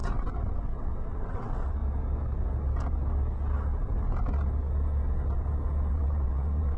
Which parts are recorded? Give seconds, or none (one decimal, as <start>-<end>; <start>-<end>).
1.8-5.9